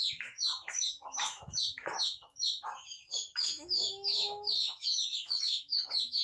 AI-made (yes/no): yes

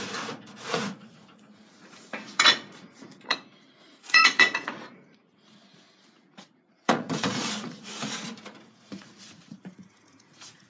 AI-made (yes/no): yes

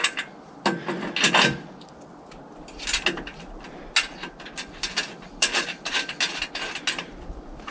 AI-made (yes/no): no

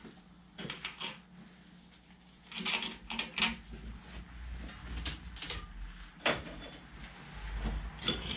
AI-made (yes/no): no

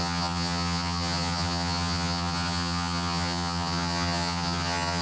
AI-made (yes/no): yes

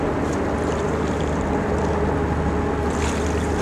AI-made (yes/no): no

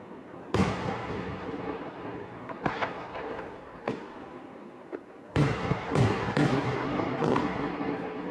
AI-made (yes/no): yes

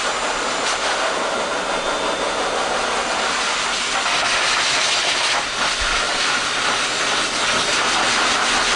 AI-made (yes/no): no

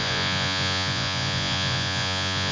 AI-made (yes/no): yes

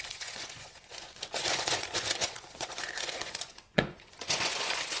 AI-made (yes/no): yes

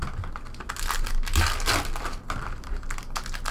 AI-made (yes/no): no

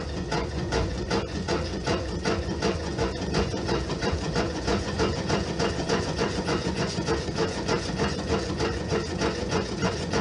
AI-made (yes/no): yes